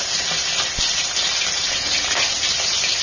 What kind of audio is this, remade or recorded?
recorded